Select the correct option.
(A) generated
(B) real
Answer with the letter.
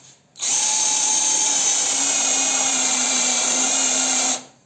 A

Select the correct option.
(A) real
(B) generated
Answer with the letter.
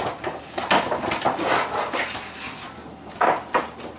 A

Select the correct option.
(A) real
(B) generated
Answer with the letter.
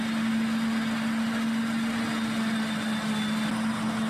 A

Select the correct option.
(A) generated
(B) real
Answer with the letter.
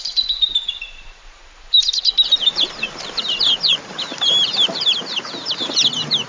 A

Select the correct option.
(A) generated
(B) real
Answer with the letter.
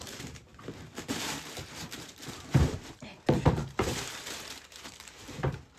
A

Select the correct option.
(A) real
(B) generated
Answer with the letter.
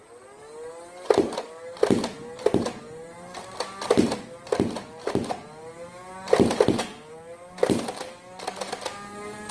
A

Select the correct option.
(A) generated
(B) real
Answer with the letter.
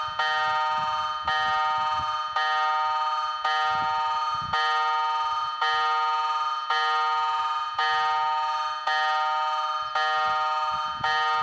B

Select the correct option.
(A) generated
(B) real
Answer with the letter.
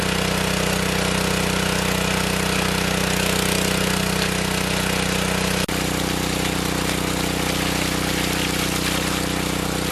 B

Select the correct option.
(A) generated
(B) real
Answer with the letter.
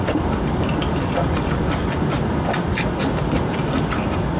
B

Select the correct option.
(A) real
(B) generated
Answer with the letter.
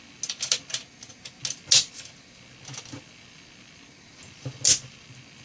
A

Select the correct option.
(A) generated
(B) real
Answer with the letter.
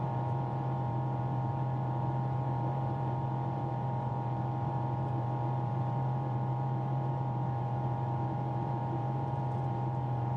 A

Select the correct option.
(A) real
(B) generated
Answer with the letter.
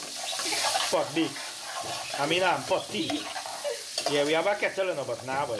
A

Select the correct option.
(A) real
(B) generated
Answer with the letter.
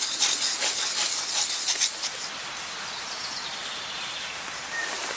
A